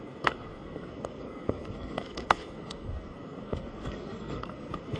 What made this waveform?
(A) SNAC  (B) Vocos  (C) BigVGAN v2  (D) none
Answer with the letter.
A